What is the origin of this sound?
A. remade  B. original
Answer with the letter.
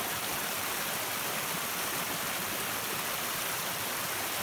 B